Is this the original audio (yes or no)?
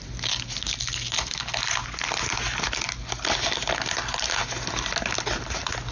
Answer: yes